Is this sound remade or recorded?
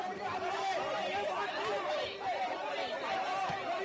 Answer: remade